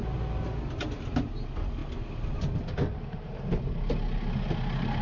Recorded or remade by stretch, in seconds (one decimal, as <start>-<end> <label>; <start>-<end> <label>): 0.0-5.0 recorded